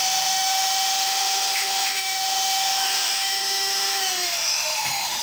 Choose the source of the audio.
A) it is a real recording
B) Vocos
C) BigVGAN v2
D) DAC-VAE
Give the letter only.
D